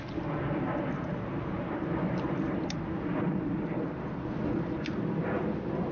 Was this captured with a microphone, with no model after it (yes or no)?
yes